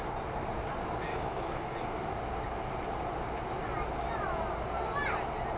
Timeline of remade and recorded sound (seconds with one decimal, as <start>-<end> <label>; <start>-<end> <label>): 0.0-1.1 recorded; 1.1-1.7 remade; 1.7-5.6 recorded